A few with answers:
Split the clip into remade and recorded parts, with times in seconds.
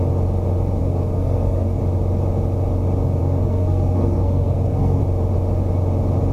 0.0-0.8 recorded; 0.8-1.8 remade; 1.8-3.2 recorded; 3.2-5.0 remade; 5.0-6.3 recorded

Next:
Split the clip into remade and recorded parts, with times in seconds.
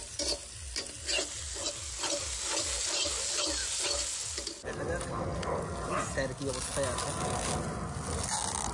0.0-8.7 recorded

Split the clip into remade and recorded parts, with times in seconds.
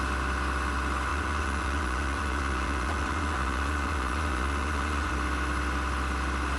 0.0-1.1 recorded; 1.1-5.1 remade; 5.1-6.6 recorded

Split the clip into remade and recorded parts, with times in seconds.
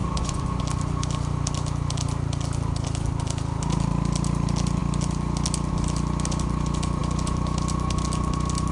0.0-0.6 remade; 0.6-8.7 recorded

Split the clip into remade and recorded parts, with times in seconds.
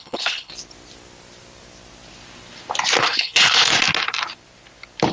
0.0-0.5 remade; 0.5-3.0 recorded; 3.0-3.7 remade; 3.7-5.1 recorded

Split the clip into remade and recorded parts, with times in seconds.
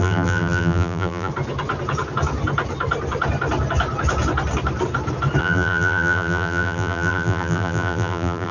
0.0-1.3 remade; 1.3-5.4 recorded; 5.4-8.5 remade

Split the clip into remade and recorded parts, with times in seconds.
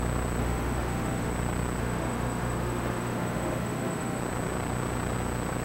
0.0-0.4 recorded; 0.4-1.3 remade; 1.3-1.8 recorded; 1.8-4.2 remade; 4.2-5.6 recorded